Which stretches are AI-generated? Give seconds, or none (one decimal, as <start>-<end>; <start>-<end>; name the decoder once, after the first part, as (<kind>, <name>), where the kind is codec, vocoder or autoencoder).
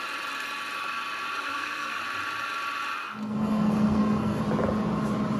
1.4-2.0 (codec, SNAC); 3.0-4.4